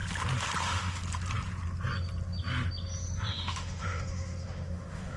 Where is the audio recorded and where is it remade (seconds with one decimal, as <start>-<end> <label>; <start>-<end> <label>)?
0.0-0.6 recorded; 0.6-1.0 remade; 1.0-3.3 recorded; 3.3-5.2 remade